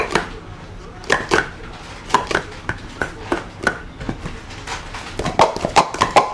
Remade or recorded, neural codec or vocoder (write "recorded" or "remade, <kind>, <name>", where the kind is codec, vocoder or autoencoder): recorded